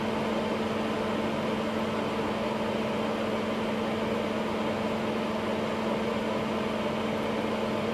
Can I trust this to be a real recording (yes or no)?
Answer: yes